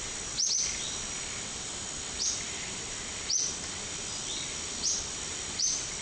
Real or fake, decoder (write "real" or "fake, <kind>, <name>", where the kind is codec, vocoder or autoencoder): real